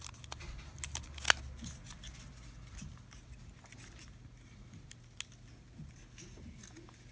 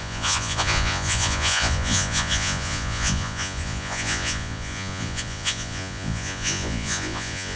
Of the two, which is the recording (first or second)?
first